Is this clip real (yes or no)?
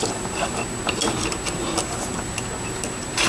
yes